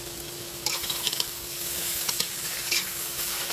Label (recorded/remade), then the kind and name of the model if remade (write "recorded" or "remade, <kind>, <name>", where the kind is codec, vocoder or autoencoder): remade, codec, DAC